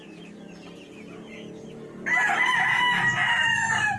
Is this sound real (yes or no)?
yes